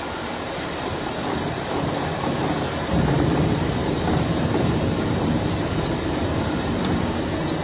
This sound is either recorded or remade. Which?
remade